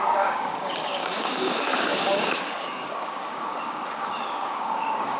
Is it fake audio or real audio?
fake